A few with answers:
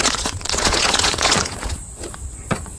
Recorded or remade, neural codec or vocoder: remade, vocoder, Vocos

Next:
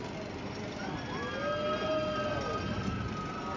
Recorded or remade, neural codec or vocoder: recorded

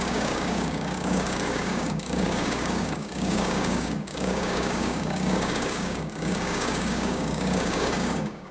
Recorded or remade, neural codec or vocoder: remade, codec, DAC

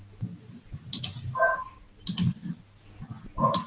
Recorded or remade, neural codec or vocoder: recorded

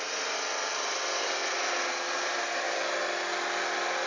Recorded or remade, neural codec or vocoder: recorded